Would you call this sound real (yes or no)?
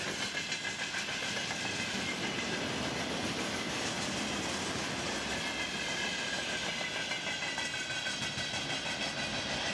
yes